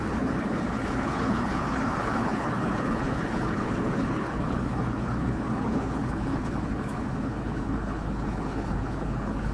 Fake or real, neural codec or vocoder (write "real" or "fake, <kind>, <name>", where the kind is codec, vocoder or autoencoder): fake, codec, HILCodec